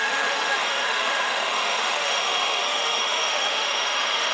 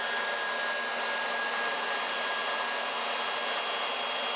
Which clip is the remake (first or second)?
first